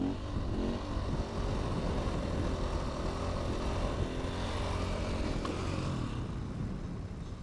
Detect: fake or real real